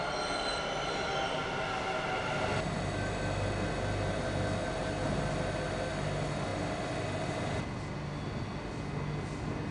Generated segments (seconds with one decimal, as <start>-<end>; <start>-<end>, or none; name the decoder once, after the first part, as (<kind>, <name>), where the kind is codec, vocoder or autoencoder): none